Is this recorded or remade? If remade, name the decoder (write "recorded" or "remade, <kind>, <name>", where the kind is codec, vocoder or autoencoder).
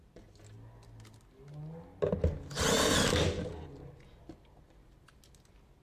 recorded